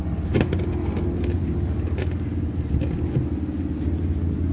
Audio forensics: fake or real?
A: real